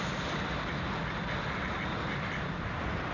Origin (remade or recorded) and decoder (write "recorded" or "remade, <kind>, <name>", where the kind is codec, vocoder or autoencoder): recorded